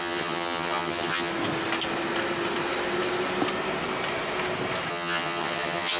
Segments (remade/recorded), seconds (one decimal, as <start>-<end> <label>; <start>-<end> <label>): 0.0-1.3 remade; 1.3-4.9 recorded; 4.9-6.0 remade

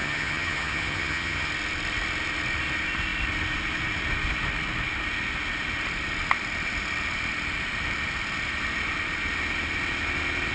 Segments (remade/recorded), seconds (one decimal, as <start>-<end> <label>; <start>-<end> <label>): 0.0-1.5 remade; 1.5-10.5 recorded

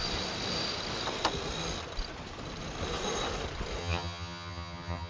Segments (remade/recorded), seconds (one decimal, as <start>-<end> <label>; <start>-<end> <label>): 0.0-3.8 recorded; 3.8-5.1 remade